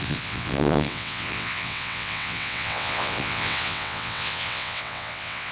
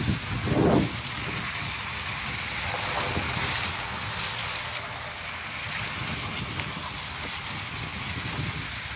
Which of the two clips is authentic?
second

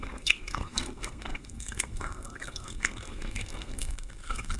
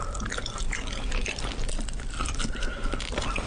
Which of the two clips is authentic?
second